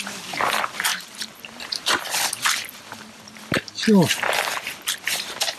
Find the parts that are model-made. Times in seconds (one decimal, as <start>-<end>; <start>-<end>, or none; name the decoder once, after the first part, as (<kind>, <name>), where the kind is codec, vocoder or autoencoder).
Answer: 0.9-2.1 (vocoder, BigVGAN v2)